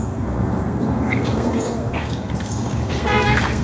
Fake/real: fake